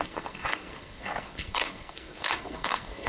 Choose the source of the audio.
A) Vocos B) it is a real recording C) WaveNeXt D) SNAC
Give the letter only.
D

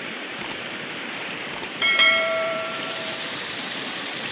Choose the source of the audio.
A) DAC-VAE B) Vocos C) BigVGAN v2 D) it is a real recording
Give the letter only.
C